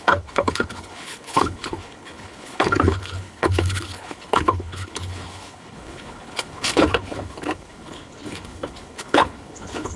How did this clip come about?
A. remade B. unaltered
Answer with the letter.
A